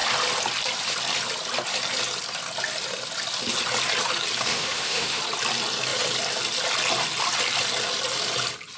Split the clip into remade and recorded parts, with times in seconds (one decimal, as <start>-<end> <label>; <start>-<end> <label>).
0.0-4.5 recorded; 4.5-5.2 remade; 5.2-8.8 recorded